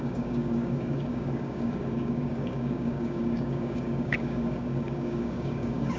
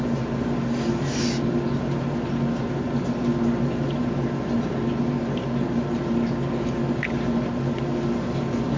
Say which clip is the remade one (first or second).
first